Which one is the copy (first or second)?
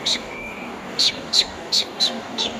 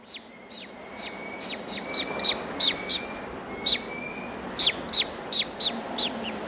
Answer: first